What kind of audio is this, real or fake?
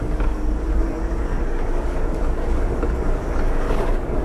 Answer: fake